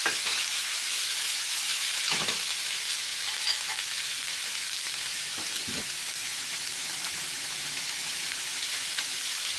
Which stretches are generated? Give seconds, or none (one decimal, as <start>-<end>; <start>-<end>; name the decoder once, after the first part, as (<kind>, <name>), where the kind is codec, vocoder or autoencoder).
0.0-9.6 (autoencoder, DAC-VAE)